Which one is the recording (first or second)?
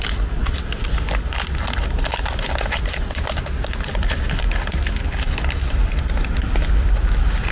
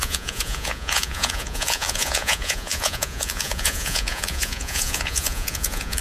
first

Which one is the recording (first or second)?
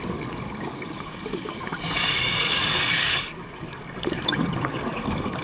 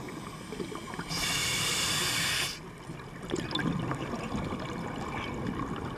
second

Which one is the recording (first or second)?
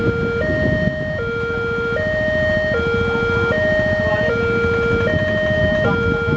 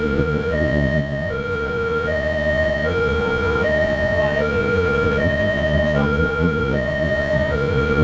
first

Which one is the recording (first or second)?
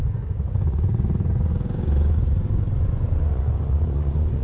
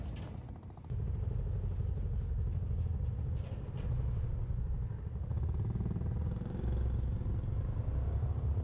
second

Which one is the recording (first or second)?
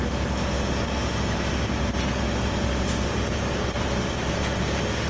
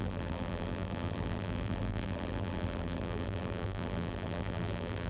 first